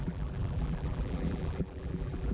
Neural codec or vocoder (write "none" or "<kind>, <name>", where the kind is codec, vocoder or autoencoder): vocoder, BigVGAN v2